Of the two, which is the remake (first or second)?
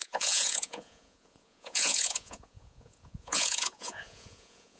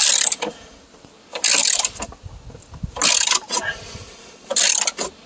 first